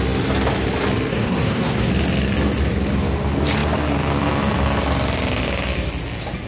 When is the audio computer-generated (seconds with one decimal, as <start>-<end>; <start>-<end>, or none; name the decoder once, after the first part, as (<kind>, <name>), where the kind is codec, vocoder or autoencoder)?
1.1-1.9 (codec, SNAC)